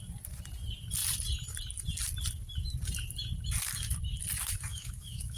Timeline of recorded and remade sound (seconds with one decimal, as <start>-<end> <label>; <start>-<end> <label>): 0.0-4.7 recorded; 4.7-5.4 remade